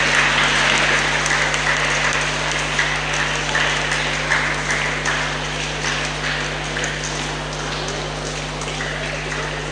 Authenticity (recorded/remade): recorded